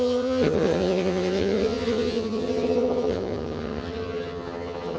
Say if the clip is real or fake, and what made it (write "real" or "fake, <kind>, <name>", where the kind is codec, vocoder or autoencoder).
fake, vocoder, HiFi-GAN